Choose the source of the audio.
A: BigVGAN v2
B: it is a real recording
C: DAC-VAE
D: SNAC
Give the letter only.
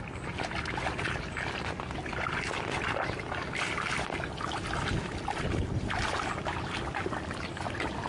B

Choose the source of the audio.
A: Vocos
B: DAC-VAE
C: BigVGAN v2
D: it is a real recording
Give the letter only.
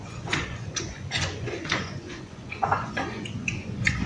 A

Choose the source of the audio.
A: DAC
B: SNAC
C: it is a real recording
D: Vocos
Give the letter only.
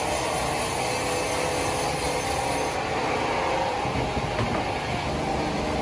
C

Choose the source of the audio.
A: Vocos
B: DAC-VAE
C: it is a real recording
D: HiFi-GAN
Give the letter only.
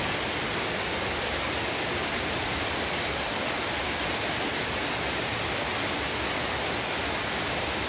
C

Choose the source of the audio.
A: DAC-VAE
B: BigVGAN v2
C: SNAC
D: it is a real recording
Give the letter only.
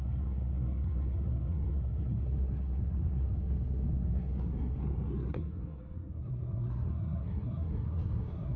C